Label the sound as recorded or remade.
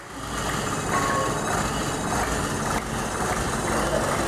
recorded